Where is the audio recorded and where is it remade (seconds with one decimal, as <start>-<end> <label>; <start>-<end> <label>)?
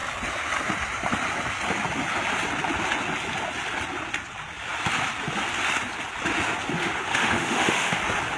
0.0-6.8 recorded; 6.8-8.0 remade; 8.0-8.4 recorded